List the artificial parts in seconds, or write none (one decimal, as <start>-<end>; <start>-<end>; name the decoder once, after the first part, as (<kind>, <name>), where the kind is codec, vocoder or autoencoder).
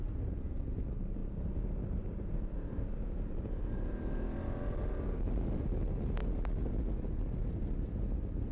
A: none